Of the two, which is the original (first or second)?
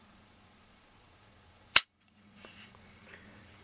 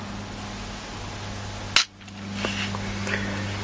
second